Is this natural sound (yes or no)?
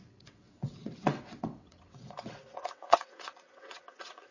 no